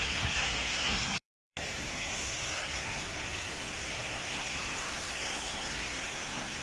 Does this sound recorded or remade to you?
remade